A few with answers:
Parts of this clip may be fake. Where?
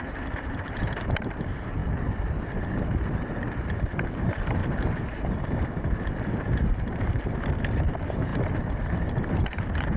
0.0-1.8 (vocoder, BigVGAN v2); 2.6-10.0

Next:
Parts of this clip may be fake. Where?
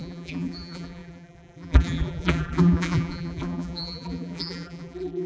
0.0-5.3 (vocoder, BigVGAN v2)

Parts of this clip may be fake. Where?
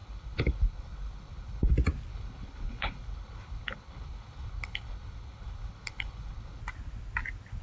0.0-1.7 (codec, HILCodec); 2.1-6.6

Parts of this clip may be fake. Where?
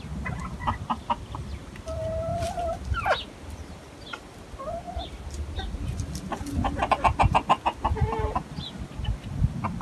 none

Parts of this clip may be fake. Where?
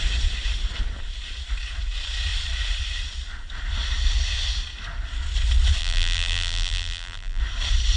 5.8-7.4 (vocoder, BigVGAN v2)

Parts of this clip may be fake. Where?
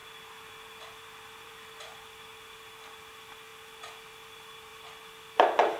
0.5-3.5 (vocoder, BigVGAN v2); 4.0-4.7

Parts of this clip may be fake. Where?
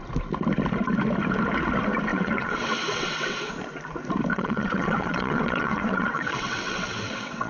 2.1-3.5 (vocoder, WaveNeXt); 4.3-7.5